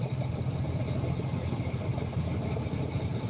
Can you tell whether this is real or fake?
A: real